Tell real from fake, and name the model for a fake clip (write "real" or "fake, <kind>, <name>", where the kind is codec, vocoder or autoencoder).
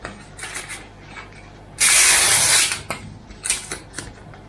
real